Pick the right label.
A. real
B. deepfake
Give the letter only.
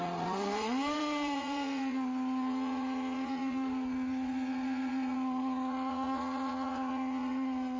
B